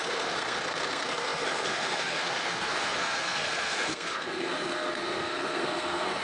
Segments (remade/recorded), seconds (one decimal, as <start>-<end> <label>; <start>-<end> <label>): 0.0-6.2 remade